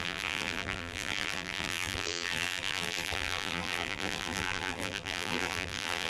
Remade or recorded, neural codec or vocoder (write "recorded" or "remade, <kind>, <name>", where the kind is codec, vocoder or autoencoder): remade, vocoder, BigVGAN v2